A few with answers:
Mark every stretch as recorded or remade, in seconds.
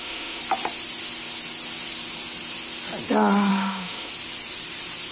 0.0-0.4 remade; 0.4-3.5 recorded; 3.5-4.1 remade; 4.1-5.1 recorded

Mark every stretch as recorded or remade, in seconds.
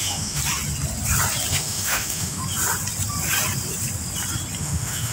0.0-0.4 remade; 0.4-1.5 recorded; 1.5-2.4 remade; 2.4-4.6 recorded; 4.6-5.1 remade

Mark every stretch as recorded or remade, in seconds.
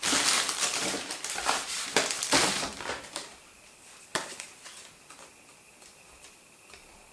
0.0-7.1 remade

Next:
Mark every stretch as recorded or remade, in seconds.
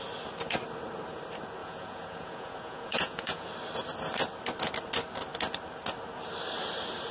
0.0-1.6 recorded; 1.6-3.5 remade; 3.5-7.1 recorded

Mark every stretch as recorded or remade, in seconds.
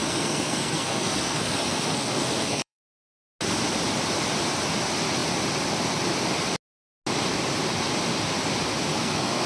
0.0-2.9 remade; 2.9-8.9 recorded; 8.9-9.5 remade